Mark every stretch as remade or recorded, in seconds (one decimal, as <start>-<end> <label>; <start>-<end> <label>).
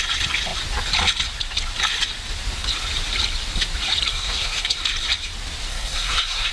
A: 0.0-4.1 recorded; 4.1-4.8 remade; 4.8-5.7 recorded; 5.7-6.5 remade